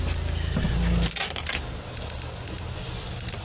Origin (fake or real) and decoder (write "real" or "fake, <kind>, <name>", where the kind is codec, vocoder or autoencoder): real